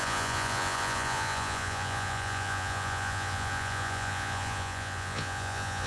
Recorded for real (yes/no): no